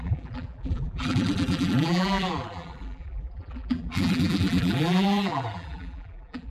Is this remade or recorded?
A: remade